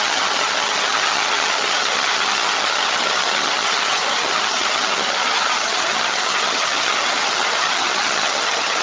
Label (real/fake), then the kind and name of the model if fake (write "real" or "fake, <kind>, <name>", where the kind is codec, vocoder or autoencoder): fake, vocoder, HiFi-GAN